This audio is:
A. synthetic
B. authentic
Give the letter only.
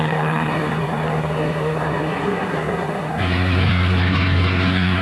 A